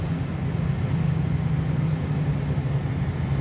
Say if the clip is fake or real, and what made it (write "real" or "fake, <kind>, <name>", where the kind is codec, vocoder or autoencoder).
real